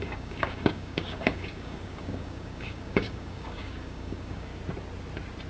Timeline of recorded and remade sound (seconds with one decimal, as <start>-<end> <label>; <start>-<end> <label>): 0.0-4.5 remade; 4.5-5.5 recorded